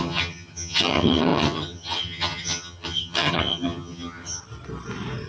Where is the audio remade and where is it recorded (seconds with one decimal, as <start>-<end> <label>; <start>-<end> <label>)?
0.0-4.4 remade; 4.4-5.3 recorded